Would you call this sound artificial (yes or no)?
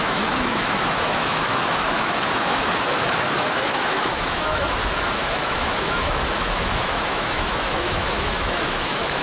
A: yes